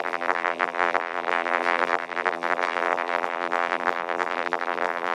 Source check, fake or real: fake